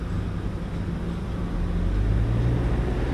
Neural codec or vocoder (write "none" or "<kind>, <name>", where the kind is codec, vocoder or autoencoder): none